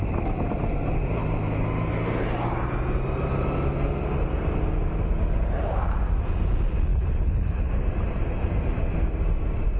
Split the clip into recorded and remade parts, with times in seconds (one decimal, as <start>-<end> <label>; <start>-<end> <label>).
0.0-6.9 recorded; 6.9-7.7 remade; 7.7-9.8 recorded